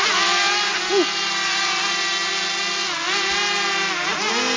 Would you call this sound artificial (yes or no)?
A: no